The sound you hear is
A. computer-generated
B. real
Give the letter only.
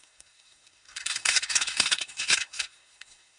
A